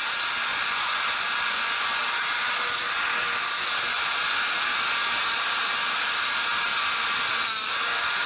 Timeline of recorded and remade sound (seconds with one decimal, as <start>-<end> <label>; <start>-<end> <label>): 0.0-0.5 recorded; 0.5-2.0 remade; 2.0-3.9 recorded; 3.9-4.4 remade; 4.4-8.3 recorded